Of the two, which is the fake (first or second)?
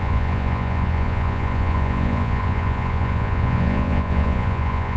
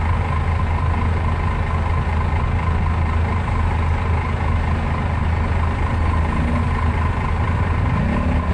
first